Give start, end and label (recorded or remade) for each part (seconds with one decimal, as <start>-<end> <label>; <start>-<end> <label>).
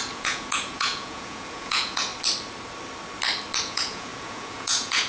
0.0-2.1 remade; 2.1-3.6 recorded; 3.6-5.1 remade